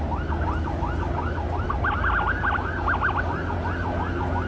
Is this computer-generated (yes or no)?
no